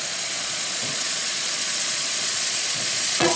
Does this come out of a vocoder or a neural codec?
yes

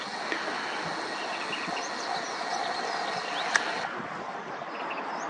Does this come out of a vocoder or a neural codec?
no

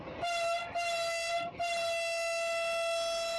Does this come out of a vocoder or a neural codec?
no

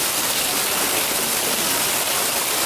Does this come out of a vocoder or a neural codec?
no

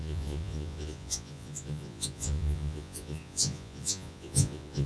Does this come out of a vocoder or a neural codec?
yes